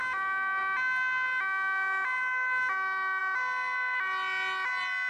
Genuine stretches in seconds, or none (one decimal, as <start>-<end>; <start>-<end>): 0.0-5.1